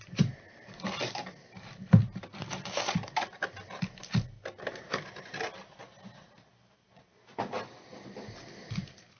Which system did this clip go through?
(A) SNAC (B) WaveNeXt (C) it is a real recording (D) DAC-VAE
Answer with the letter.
C